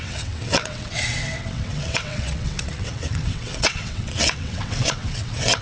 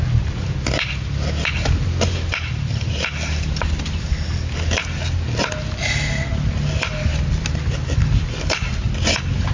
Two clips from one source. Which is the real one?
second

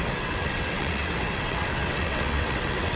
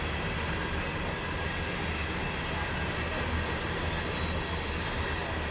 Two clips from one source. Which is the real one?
second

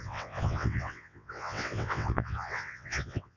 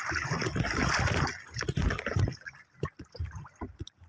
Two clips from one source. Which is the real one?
second